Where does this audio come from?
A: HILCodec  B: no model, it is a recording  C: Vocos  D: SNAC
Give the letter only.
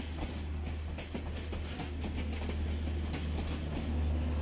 B